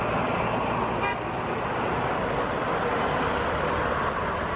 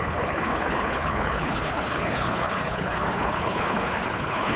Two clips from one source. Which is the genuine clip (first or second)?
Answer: first